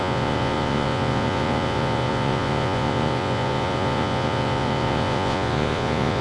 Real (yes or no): no